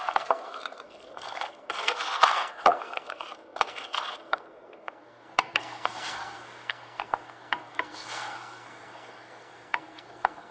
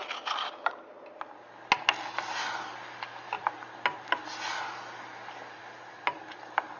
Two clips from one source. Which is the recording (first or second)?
second